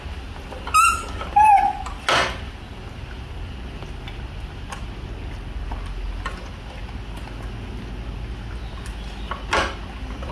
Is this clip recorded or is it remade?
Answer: recorded